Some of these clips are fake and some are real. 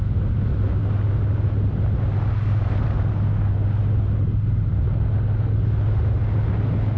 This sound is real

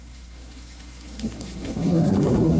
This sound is fake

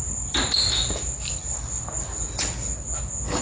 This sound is real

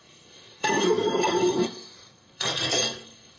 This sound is fake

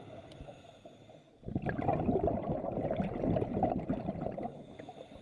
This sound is real